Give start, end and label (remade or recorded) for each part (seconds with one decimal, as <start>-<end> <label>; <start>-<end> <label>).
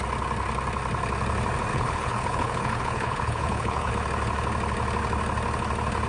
0.0-1.7 recorded; 1.7-3.9 remade; 3.9-6.1 recorded